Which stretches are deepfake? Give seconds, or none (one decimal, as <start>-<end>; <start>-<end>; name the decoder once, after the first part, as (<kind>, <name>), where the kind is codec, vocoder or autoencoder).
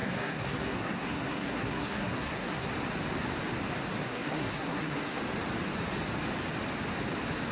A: 0.0-2.7 (codec, SNAC); 4.0-5.2